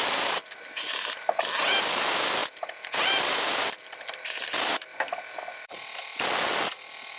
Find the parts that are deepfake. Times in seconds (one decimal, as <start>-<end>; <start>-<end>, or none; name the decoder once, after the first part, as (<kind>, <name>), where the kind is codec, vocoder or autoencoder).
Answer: 0.0-1.4 (vocoder, BigVGAN v2)